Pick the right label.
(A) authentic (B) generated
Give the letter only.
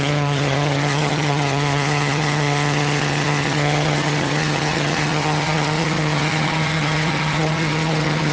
B